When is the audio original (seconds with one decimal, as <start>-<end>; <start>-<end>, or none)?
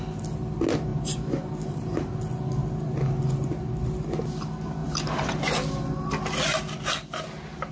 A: 0.0-0.9; 2.1-4.8; 5.4-7.7